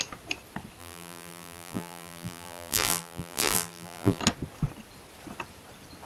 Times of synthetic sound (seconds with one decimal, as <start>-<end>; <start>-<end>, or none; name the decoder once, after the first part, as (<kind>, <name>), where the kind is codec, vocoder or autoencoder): 0.8-4.2 (vocoder, BigVGAN v2)